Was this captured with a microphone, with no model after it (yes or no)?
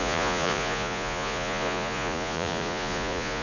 no